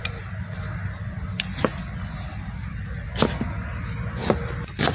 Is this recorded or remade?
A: recorded